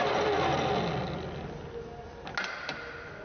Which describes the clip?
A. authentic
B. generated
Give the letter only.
A